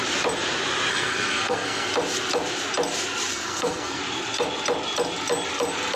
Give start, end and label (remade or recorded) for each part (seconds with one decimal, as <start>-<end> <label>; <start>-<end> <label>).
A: 0.0-0.9 recorded; 0.9-1.9 remade; 1.9-3.3 recorded; 3.3-4.0 remade; 4.0-6.0 recorded